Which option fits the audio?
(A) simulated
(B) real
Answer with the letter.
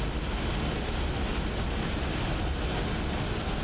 B